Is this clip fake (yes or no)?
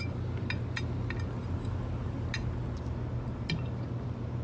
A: no